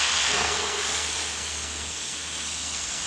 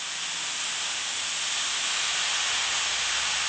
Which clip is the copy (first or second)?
first